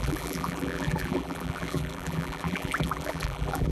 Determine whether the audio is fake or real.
fake